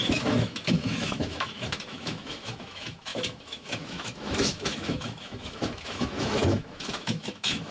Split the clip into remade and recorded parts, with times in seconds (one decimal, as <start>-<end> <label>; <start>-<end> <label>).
0.0-7.7 remade